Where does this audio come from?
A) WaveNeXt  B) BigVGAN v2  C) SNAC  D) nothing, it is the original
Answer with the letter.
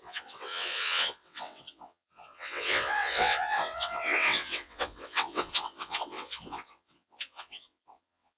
A